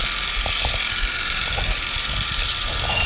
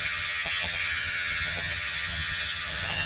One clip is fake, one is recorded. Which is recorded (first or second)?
first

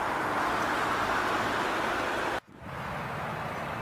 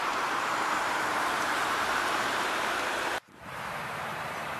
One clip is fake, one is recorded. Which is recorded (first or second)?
first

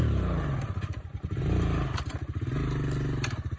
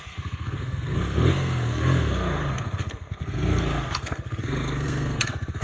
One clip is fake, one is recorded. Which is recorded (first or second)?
first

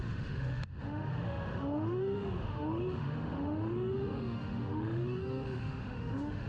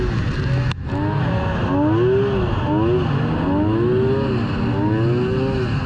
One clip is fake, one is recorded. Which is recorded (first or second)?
second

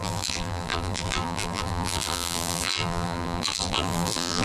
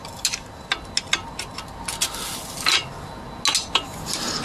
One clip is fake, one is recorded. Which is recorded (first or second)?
second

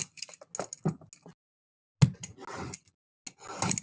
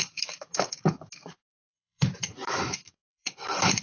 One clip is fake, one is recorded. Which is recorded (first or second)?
first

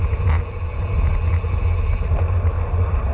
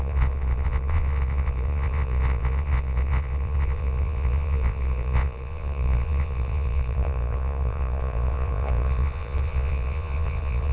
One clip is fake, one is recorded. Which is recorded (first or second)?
first